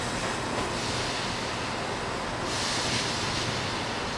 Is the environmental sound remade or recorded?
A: recorded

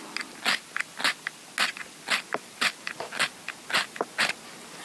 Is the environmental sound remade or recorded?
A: recorded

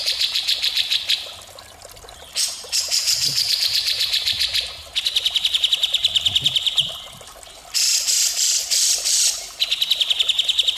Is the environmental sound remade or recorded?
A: remade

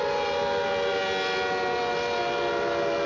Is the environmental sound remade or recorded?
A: recorded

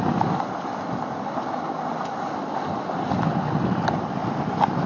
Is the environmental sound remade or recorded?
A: recorded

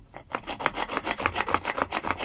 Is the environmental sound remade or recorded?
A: recorded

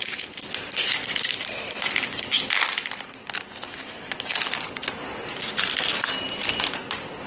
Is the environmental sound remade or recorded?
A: recorded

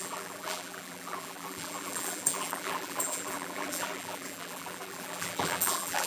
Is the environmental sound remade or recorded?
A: remade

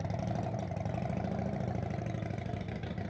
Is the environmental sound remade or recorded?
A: remade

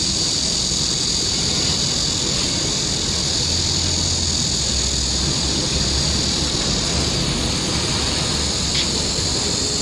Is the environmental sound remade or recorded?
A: recorded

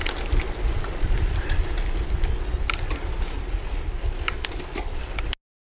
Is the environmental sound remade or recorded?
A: recorded